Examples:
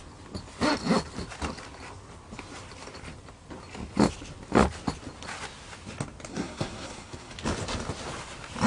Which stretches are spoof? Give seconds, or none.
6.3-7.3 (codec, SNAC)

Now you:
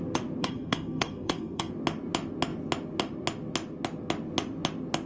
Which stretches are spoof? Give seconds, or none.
0.4-1.7 (codec, SNAC)

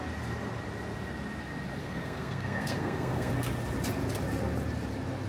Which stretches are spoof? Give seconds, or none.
1.8-3.3 (codec, SNAC)

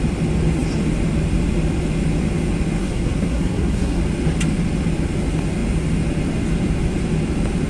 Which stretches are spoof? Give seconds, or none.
2.8-4.0 (codec, SNAC)

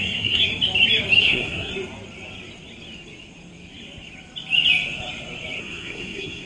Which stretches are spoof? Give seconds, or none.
0.0-0.5 (codec, SNAC); 1.2-1.7; 5.6-6.5